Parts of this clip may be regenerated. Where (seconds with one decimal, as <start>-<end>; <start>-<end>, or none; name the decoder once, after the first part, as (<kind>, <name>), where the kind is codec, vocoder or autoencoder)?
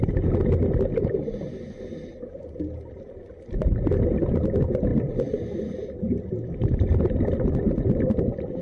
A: none